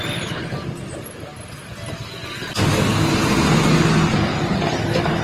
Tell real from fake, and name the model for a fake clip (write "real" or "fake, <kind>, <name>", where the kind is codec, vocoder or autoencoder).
real